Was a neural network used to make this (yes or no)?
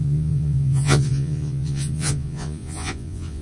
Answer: yes